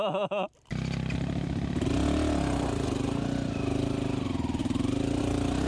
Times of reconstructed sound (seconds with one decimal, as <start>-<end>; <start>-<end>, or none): none